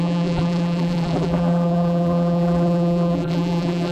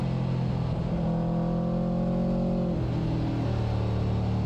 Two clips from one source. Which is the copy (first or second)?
first